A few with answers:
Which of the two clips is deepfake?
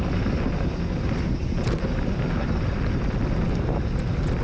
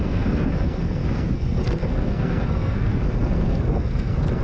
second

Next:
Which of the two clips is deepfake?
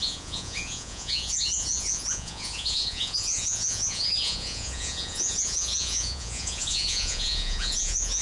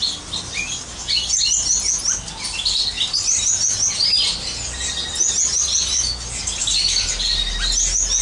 first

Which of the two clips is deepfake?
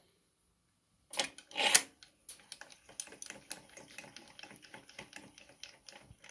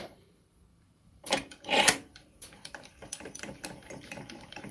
second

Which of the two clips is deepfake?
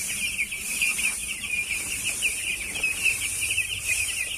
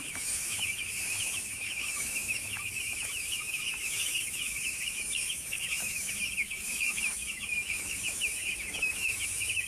second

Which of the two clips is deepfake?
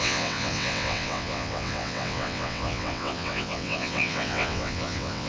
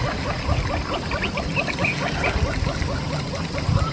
first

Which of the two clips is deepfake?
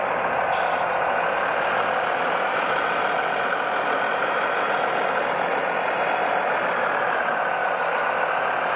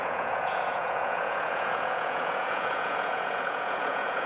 second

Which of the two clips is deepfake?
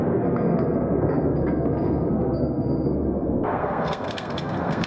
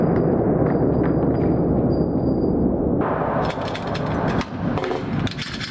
first